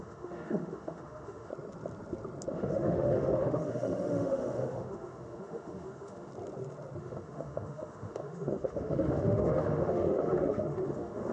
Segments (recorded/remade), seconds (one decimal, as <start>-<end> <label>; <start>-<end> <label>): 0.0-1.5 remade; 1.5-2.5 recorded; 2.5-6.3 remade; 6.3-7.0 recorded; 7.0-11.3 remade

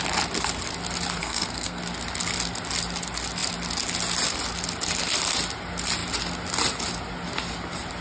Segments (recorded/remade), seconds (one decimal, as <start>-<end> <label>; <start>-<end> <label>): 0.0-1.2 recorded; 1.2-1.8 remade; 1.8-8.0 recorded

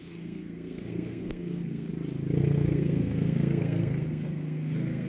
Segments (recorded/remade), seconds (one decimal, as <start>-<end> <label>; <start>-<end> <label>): 0.0-1.9 remade; 1.9-2.4 recorded; 2.4-5.1 remade